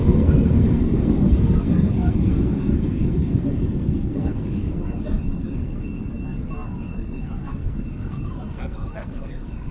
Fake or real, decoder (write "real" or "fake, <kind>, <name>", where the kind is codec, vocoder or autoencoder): fake, codec, SNAC